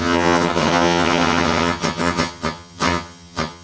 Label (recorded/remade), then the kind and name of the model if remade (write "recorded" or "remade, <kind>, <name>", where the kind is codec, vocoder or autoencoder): remade, vocoder, HiFi-GAN